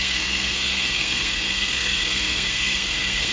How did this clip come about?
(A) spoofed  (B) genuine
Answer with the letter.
A